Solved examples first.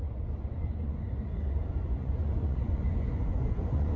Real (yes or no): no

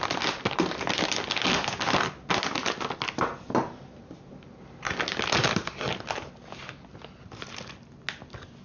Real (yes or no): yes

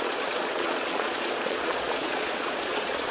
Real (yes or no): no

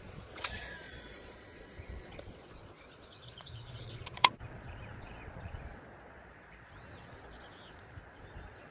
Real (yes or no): no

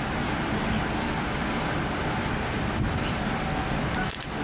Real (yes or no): yes